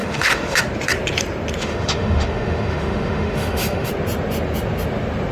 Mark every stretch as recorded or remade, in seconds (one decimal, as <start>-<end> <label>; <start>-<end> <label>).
0.0-0.6 remade; 0.6-1.6 recorded; 1.6-3.9 remade; 3.9-5.3 recorded